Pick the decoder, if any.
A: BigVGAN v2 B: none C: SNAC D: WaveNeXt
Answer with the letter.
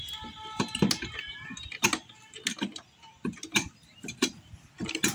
B